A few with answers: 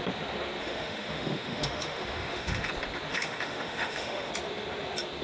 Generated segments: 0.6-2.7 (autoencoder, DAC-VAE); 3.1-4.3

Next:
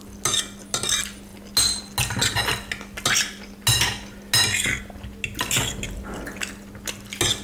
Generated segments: none

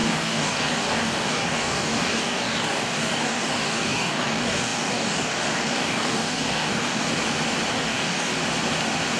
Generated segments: 0.0-7.2 (codec, DAC); 7.7-8.3

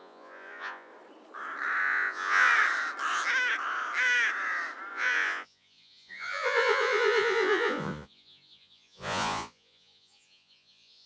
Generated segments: 0.0-0.9 (vocoder, Vocos); 1.8-2.5; 4.9-11.1

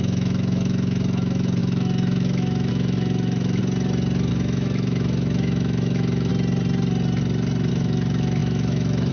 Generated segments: 0.0-3.6 (autoencoder, DAC-VAE); 4.3-6.3; 7.7-9.1